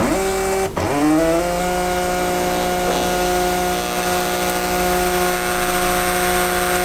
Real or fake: real